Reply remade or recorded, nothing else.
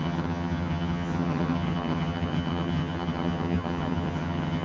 remade